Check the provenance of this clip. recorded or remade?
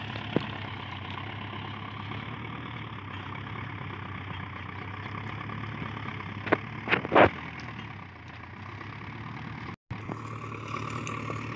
recorded